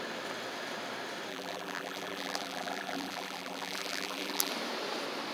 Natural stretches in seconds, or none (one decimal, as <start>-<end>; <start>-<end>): 0.0-1.3; 4.5-5.3